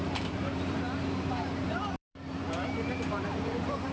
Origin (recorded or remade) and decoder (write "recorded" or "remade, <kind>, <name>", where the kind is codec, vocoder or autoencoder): remade, vocoder, BigVGAN v2